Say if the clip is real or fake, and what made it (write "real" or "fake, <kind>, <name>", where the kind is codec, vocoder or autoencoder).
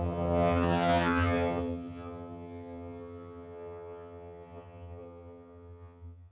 fake, vocoder, HiFi-GAN